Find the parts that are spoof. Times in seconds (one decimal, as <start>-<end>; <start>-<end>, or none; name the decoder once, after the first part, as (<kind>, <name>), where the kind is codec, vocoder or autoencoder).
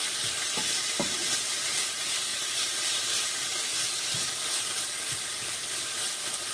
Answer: none